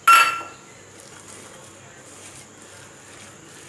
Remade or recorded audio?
recorded